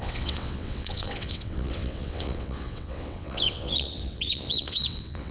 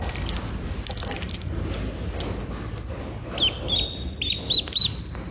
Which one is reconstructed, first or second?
first